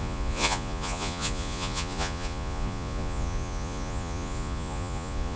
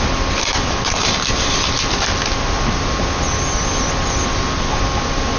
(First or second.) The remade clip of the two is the first